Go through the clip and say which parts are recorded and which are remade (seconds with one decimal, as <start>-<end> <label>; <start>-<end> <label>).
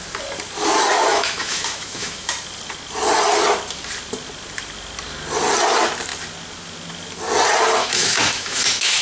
0.0-1.1 recorded; 1.1-2.3 remade; 2.3-7.8 recorded; 7.8-9.0 remade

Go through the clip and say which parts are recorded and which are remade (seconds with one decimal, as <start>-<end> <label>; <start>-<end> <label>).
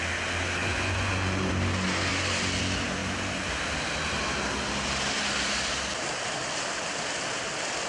0.0-0.6 recorded; 0.6-1.5 remade; 1.5-7.9 recorded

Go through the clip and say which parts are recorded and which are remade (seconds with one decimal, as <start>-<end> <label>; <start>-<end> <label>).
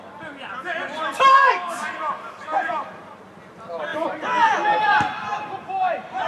0.0-3.9 recorded; 3.9-6.3 remade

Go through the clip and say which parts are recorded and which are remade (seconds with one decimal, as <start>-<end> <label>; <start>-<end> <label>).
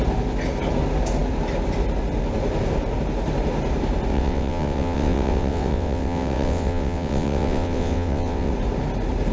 0.0-4.1 recorded; 4.1-8.5 remade; 8.5-9.3 recorded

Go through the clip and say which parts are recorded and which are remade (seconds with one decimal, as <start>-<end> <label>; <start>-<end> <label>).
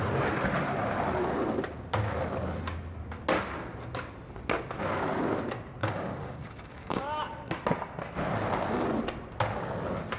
0.0-5.8 recorded; 5.8-7.0 remade; 7.0-10.2 recorded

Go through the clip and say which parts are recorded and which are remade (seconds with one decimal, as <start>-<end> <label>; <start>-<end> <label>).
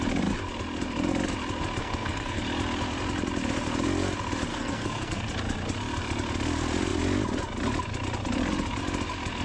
0.0-1.8 recorded; 1.8-2.4 remade; 2.4-4.5 recorded; 4.5-5.3 remade; 5.3-9.4 recorded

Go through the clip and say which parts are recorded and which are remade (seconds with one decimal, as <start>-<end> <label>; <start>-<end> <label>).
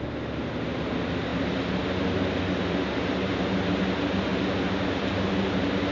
0.0-5.9 recorded